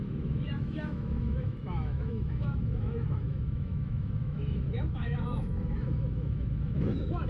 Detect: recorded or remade remade